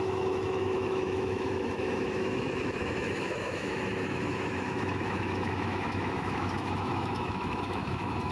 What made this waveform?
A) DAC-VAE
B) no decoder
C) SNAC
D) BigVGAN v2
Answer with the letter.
A